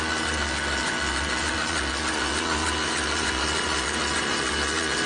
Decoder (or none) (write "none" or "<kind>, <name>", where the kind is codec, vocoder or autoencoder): vocoder, Vocos